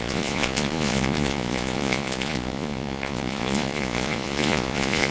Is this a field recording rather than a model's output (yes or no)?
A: no